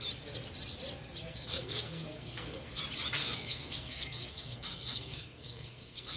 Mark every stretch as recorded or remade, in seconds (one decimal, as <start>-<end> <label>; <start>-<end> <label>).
0.0-1.2 recorded; 1.2-2.8 remade; 2.8-3.2 recorded; 3.2-6.2 remade